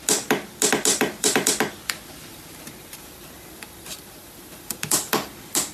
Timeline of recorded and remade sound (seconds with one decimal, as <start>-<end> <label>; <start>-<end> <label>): 0.0-0.9 recorded; 0.9-1.5 remade; 1.5-2.3 recorded; 2.3-5.3 remade; 5.3-5.7 recorded